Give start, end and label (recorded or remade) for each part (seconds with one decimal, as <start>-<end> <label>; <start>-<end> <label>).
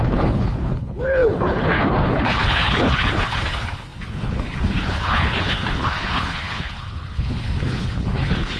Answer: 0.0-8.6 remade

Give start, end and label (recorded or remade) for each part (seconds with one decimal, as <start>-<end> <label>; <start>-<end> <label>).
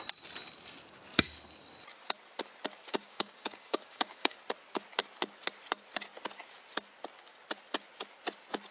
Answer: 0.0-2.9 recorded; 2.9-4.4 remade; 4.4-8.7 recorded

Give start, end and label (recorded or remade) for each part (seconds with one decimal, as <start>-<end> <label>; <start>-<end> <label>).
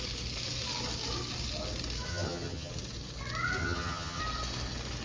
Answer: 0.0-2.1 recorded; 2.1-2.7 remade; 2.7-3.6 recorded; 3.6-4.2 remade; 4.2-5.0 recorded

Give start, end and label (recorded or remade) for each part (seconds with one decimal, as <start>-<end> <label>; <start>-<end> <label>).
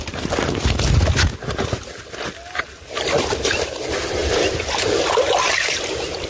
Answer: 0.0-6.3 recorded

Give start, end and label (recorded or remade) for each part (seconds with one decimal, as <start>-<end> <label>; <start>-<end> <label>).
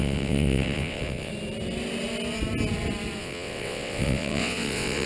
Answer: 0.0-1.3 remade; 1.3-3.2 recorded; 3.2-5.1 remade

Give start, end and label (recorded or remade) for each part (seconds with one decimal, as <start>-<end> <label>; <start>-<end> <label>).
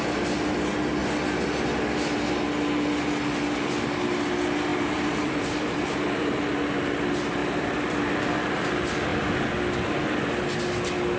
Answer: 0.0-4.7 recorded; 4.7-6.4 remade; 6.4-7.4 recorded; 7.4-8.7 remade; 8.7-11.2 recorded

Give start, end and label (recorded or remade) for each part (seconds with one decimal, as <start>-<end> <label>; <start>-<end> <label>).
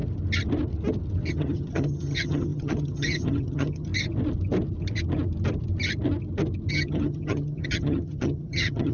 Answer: 0.0-1.3 recorded; 1.3-3.9 remade; 3.9-6.7 recorded; 6.7-8.9 remade